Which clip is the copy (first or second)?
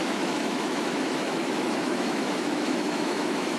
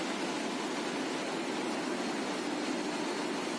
first